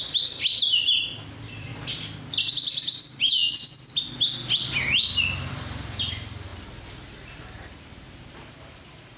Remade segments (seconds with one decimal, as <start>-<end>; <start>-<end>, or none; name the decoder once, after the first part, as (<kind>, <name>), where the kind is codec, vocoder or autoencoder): 0.0-1.7 (vocoder, BigVGAN v2); 2.5-3.4; 5.5-6.5; 8.3-9.2